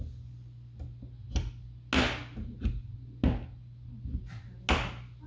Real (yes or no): yes